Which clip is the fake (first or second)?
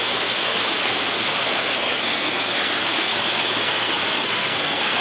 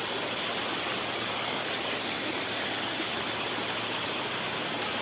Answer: first